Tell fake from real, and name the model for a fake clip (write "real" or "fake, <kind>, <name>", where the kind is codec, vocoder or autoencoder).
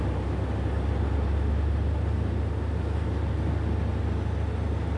real